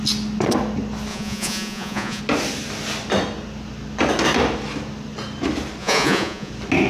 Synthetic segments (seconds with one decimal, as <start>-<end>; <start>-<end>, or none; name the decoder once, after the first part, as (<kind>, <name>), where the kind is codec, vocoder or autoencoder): 1.1-2.2 (vocoder, Vocos); 5.8-6.5

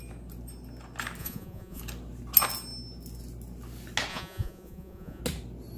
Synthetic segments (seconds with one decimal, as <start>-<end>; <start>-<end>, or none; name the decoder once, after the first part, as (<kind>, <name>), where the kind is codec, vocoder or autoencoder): 1.2-1.8 (vocoder, Vocos); 4.1-5.2

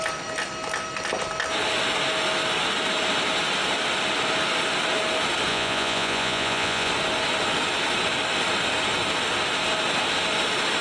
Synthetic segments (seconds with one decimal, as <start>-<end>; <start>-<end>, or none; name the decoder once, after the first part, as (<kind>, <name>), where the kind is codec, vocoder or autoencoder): 5.5-6.9 (vocoder, Vocos)

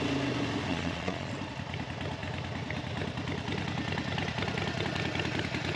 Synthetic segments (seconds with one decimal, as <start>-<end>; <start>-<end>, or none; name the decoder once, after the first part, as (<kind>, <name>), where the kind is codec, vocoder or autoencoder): 0.7-1.3 (vocoder, Vocos)